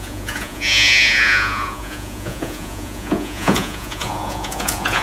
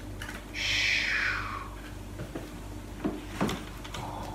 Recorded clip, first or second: second